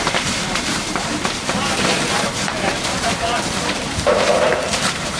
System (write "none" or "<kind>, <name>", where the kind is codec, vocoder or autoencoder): vocoder, BigVGAN v2